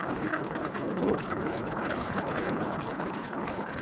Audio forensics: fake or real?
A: fake